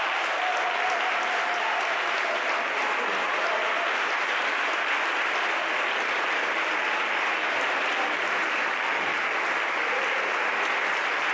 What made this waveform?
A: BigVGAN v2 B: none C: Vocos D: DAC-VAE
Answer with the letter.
B